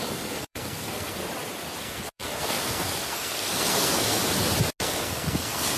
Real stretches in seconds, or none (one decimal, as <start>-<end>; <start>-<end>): 1.2-1.8; 4.2-4.8